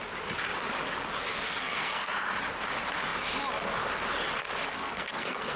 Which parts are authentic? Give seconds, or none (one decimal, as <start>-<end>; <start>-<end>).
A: 0.0-1.3; 2.1-4.7